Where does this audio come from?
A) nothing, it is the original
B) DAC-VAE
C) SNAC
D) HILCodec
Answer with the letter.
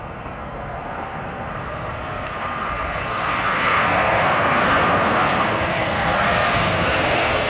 C